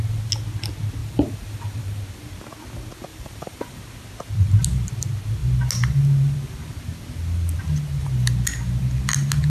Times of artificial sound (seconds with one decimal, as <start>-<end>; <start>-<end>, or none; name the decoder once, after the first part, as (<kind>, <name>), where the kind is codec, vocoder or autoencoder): 1.0-2.0 (vocoder, BigVGAN v2); 3.1-3.8